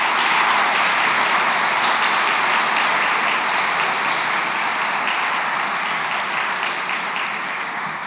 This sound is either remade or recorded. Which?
recorded